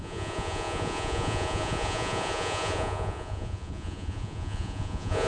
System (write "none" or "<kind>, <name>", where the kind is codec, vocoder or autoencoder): vocoder, Vocos